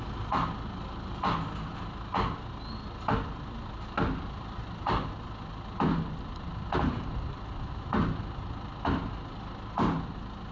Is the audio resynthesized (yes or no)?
no